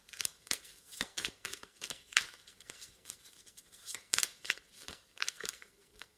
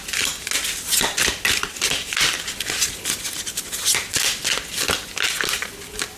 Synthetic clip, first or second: first